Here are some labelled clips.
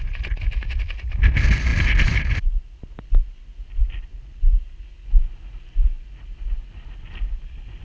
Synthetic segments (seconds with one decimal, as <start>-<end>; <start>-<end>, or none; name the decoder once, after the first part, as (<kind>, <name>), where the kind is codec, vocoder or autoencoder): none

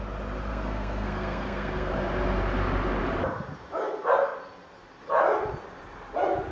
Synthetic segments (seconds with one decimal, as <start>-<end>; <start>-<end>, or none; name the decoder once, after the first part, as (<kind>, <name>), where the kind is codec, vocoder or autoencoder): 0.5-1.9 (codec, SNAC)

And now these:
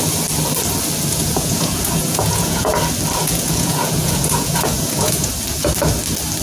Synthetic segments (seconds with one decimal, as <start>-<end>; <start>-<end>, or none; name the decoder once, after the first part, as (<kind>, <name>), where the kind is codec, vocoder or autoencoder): 1.1-2.7 (vocoder, Vocos); 3.2-5.3

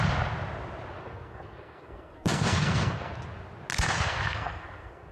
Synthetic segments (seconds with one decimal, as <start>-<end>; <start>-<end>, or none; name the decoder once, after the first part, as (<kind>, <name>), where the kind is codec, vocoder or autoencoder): 1.0-3.1 (codec, SNAC); 3.7-5.1

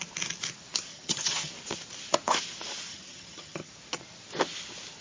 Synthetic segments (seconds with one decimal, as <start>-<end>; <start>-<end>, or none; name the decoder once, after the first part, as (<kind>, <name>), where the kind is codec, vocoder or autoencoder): 0.9-1.5 (vocoder, HiFi-GAN); 2.9-3.7

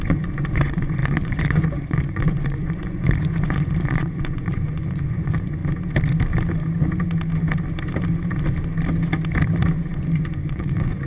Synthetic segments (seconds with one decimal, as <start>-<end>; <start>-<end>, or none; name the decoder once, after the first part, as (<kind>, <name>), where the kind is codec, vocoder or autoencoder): 0.0-5.6 (vocoder, Vocos); 9.9-11.1

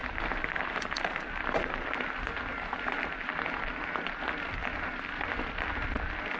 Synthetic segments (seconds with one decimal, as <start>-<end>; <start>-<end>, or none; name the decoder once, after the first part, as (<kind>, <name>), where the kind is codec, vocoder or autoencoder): none

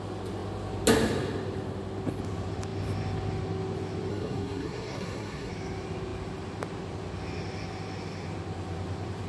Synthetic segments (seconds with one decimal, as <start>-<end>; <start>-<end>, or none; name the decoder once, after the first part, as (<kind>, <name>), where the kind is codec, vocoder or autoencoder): 4.1-5.5 (codec, SNAC)